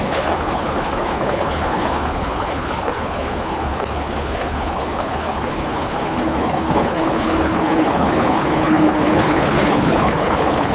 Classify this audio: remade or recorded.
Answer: remade